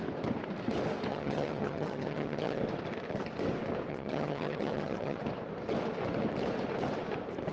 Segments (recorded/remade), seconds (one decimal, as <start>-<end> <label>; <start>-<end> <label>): 0.0-1.1 recorded; 1.1-2.6 remade; 2.6-3.9 recorded; 3.9-5.2 remade; 5.2-7.5 recorded